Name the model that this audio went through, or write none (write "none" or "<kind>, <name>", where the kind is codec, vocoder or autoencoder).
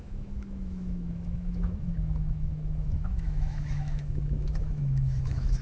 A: autoencoder, DAC-VAE